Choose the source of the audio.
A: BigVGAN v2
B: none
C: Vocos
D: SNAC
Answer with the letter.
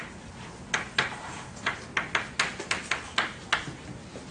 B